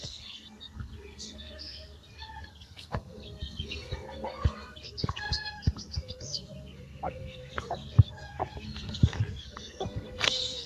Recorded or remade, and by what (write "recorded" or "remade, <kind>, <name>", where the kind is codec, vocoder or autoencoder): remade, codec, SNAC